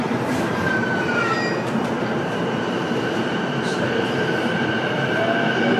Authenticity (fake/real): fake